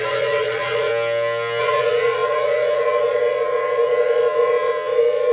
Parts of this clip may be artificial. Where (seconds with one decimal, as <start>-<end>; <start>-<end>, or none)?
0.0-0.9; 1.6-5.3